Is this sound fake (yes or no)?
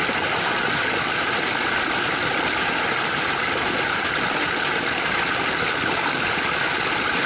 no